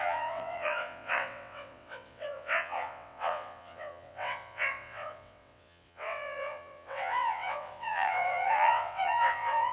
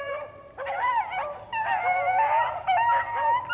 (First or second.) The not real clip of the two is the first